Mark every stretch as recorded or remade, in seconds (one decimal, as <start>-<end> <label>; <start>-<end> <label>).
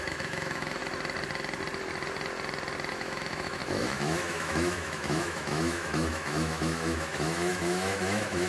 0.0-0.8 remade; 0.8-2.9 recorded; 2.9-8.5 remade